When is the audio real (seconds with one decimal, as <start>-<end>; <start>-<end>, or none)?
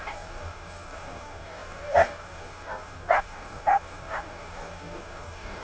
none